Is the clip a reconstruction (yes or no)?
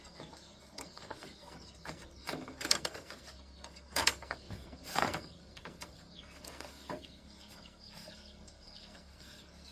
yes